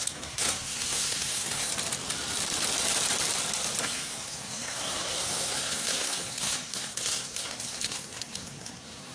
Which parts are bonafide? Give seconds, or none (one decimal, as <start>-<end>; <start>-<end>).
1.7-3.8